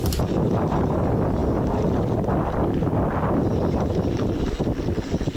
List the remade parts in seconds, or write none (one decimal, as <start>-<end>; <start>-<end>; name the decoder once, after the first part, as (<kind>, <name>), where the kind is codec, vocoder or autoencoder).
none